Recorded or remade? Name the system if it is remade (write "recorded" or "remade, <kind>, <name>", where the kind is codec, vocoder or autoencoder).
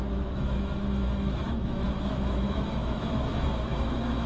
remade, autoencoder, DAC-VAE